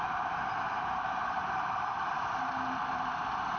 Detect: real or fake real